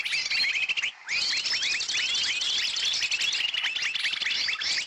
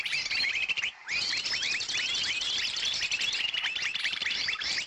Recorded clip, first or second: first